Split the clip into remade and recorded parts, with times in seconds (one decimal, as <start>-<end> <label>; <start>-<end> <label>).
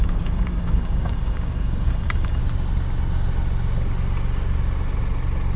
0.0-2.4 remade; 2.4-5.6 recorded